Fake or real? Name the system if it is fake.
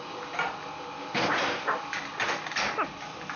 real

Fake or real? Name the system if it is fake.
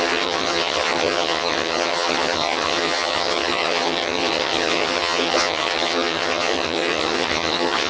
fake, vocoder, HiFi-GAN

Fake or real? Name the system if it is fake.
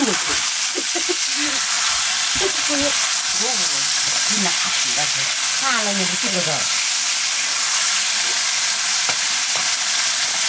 real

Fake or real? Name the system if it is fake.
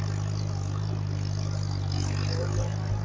real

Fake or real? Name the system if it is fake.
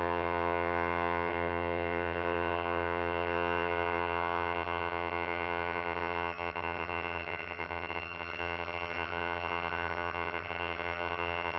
fake, vocoder, HiFi-GAN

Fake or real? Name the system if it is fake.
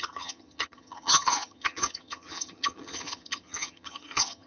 fake, vocoder, HiFi-GAN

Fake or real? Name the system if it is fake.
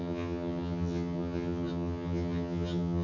fake, vocoder, HiFi-GAN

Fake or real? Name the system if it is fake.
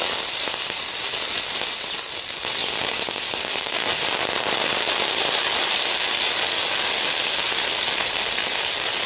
real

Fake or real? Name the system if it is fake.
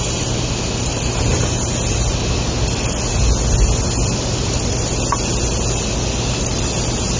real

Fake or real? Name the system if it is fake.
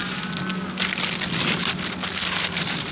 real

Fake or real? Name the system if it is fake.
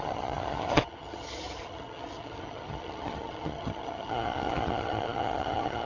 fake, vocoder, HiFi-GAN